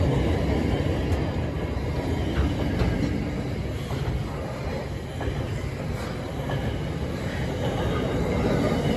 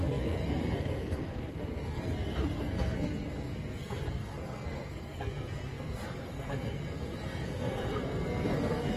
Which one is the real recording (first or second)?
first